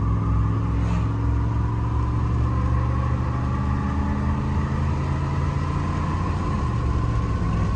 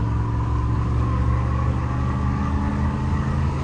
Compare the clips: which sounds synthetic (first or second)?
second